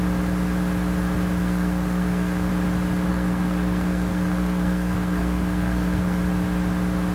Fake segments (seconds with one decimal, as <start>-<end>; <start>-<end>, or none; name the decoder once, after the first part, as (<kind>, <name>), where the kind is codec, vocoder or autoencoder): 1.4-2.5 (codec, SNAC); 3.1-6.2

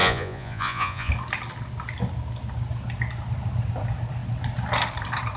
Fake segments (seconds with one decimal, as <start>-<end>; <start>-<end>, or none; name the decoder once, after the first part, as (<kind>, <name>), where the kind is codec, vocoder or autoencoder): 0.0-1.1 (vocoder, Vocos)